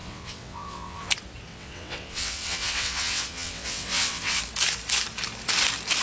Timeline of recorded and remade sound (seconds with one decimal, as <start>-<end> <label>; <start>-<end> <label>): 0.0-1.1 remade; 1.1-1.5 recorded; 1.5-4.4 remade; 4.4-6.0 recorded